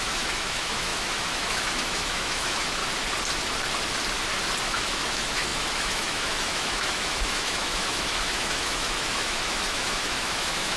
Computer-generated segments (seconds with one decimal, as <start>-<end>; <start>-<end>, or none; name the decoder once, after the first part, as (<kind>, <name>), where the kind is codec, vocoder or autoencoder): 0.0-2.8 (autoencoder, DAC-VAE); 4.6-10.8